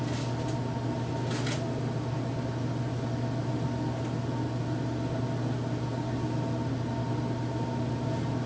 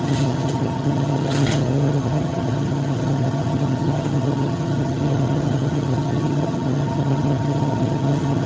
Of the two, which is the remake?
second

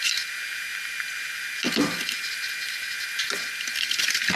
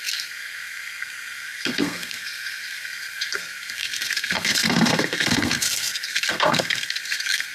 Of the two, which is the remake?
second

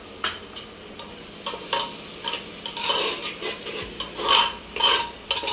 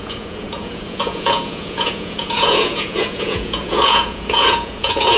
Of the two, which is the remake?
second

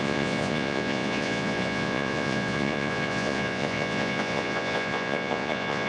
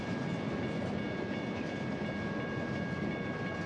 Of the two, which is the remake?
first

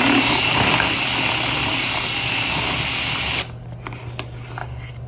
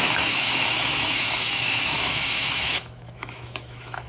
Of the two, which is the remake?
second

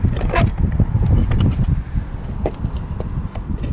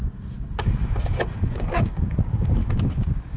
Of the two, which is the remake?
second